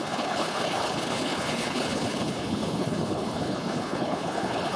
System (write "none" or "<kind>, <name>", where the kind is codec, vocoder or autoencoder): codec, HILCodec